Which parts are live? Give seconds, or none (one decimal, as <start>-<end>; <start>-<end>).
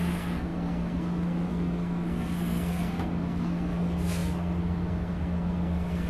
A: none